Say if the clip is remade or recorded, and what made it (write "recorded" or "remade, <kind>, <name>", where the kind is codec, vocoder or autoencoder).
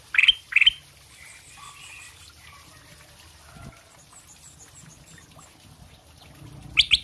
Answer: recorded